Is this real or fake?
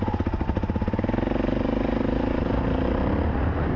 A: real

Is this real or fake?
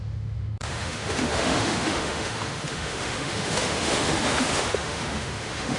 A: fake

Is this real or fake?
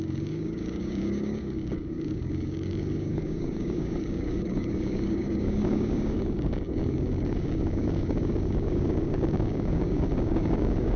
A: fake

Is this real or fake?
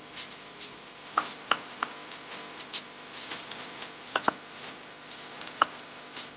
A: real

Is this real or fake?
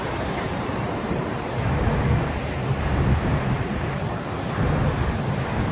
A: fake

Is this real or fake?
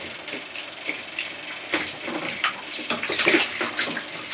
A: real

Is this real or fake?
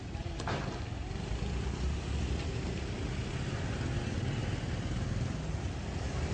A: real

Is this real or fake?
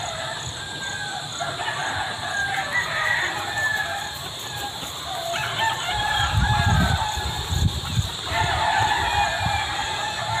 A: real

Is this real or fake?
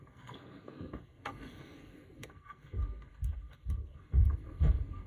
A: fake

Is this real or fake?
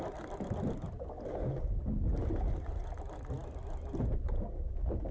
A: real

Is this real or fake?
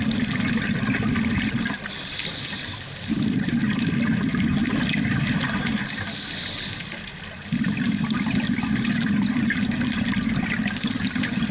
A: real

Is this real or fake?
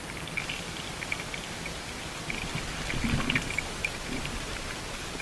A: real